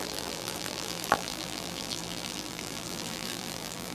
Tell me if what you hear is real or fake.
fake